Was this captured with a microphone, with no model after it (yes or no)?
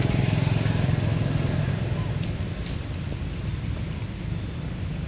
yes